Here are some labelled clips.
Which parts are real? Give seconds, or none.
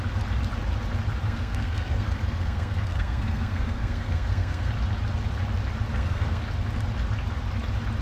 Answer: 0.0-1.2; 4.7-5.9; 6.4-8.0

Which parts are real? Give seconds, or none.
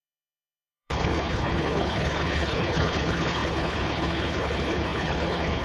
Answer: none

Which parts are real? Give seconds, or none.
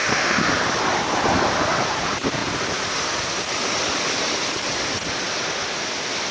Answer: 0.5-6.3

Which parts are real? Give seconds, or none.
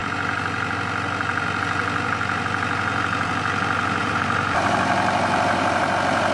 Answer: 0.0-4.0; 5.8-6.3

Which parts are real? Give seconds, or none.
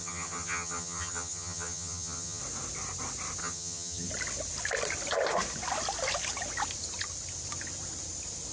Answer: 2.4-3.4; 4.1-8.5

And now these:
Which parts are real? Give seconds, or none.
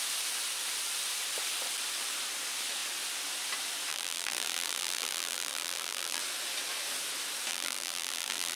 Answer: 0.0-3.9; 6.2-7.5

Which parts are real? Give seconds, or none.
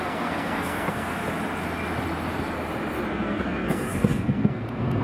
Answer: 1.2-3.1